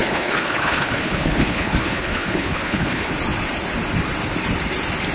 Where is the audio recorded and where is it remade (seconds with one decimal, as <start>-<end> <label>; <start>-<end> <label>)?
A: 0.0-3.1 remade; 3.1-5.1 recorded